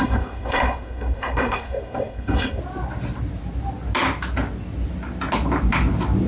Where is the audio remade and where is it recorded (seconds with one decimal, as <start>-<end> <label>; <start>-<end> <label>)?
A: 0.0-2.6 remade; 2.6-6.3 recorded